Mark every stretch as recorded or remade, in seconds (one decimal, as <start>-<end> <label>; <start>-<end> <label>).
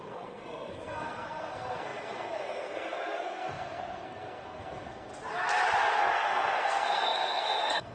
0.0-5.1 remade; 5.1-5.9 recorded; 5.9-7.9 remade